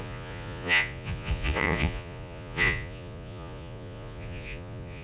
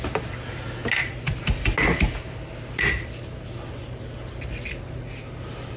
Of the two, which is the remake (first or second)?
first